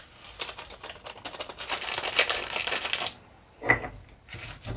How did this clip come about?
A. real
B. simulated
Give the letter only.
A